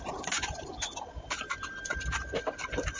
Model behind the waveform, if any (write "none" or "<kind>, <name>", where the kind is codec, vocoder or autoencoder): none